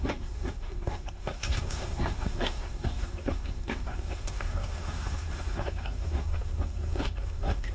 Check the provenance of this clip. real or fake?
fake